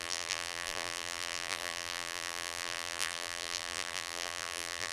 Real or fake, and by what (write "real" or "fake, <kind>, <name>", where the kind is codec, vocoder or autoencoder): fake, vocoder, BigVGAN v2